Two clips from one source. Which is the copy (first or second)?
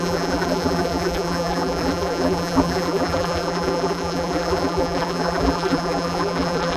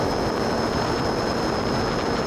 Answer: first